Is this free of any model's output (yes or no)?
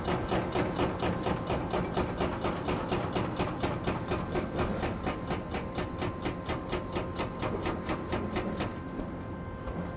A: yes